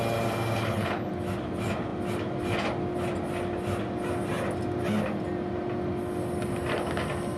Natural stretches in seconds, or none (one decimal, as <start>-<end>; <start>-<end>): 0.0-0.6; 1.1-7.4